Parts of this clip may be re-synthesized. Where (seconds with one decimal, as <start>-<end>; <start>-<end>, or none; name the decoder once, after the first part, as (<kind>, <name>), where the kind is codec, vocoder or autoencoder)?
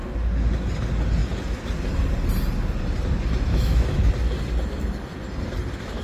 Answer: 3.5-4.1 (autoencoder, DAC-VAE)